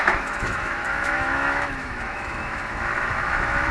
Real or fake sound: fake